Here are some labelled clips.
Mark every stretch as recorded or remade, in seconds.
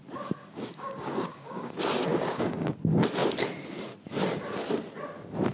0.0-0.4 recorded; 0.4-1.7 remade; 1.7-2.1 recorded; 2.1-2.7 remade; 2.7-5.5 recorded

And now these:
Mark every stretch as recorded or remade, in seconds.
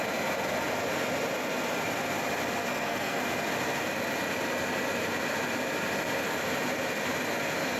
0.0-2.7 recorded; 2.7-3.2 remade; 3.2-7.8 recorded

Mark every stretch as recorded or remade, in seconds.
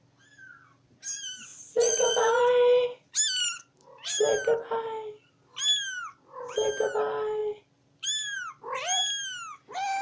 0.0-1.5 recorded; 1.5-2.4 remade; 2.4-10.0 recorded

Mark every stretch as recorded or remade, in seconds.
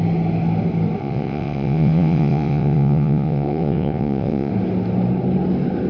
0.0-1.0 recorded; 1.0-4.5 remade; 4.5-5.9 recorded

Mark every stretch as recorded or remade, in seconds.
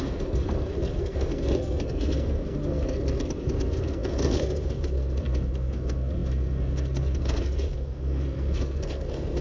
0.0-9.4 remade